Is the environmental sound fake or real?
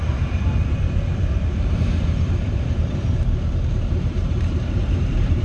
fake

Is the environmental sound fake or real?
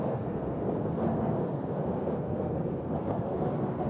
fake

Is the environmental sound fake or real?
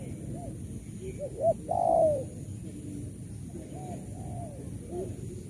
real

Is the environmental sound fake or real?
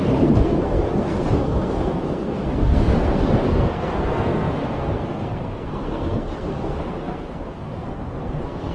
fake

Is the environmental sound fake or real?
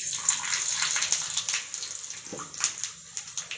real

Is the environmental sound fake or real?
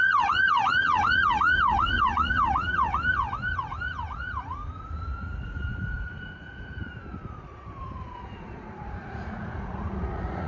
fake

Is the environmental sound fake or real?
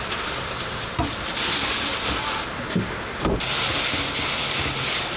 real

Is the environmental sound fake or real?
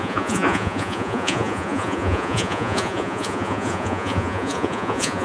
fake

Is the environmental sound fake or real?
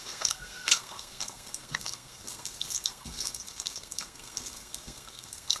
fake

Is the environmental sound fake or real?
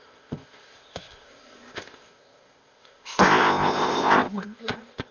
fake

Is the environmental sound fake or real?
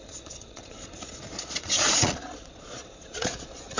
fake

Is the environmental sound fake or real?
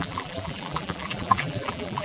fake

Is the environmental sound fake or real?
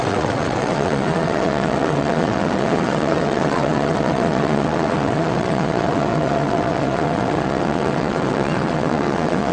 fake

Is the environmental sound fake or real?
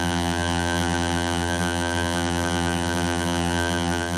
fake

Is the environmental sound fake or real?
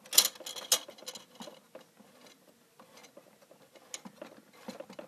real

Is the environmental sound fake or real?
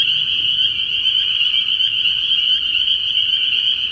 real